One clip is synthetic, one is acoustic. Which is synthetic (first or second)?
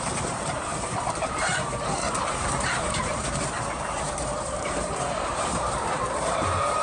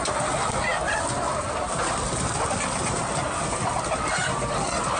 first